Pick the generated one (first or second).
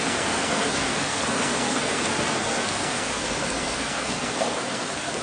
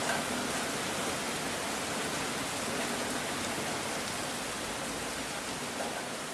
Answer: first